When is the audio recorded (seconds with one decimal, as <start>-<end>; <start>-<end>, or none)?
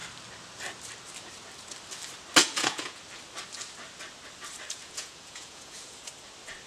0.0-2.4; 3.0-4.8; 6.1-6.7